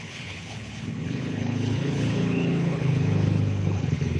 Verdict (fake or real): fake